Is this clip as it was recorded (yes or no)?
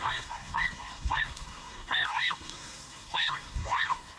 no